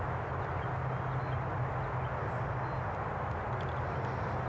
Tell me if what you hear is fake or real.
real